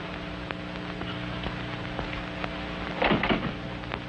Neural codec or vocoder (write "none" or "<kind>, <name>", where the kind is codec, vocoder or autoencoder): none